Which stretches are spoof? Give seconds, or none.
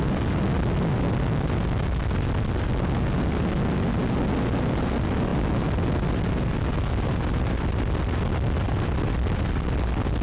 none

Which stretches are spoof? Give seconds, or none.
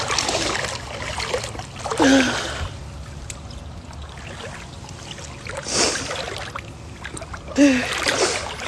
none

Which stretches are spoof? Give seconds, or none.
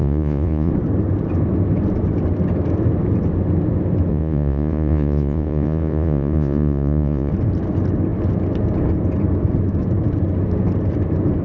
0.0-0.7 (vocoder, Vocos); 4.1-7.3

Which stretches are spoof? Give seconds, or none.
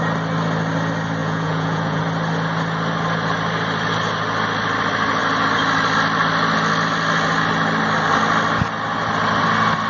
1.2-2.0 (vocoder, Vocos)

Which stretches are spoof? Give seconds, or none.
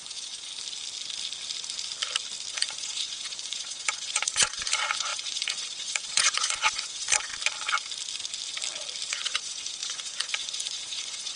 0.0-0.5 (vocoder, Vocos); 2.5-7.3; 9.1-11.4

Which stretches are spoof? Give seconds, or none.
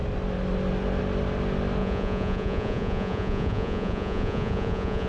1.8-5.1 (vocoder, Vocos)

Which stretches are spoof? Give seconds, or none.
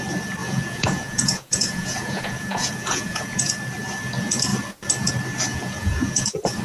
0.4-3.5 (vocoder, Vocos); 5.5-6.6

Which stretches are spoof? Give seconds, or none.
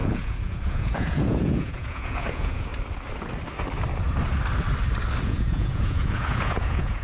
0.0-2.7 (vocoder, Vocos); 5.2-7.0